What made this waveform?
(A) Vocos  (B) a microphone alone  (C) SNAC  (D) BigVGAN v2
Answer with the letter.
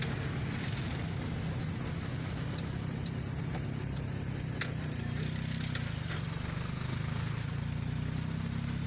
B